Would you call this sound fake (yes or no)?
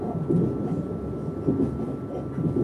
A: no